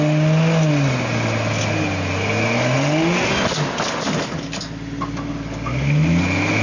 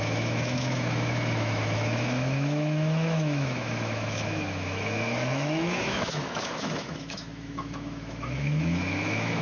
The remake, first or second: second